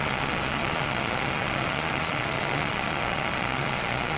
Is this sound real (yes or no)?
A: no